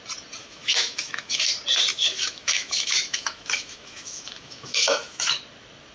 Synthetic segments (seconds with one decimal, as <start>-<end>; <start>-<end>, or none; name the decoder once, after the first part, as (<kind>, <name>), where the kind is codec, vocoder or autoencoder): 0.4-1.5 (autoencoder, DAC-VAE); 1.9-5.4